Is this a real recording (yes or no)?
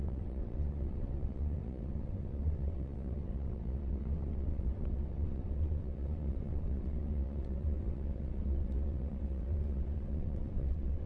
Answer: no